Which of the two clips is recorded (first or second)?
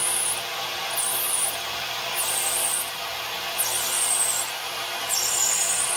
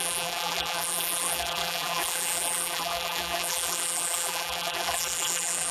first